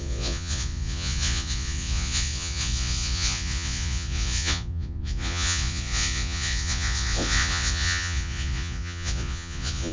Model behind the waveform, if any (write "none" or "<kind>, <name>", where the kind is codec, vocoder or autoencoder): vocoder, Vocos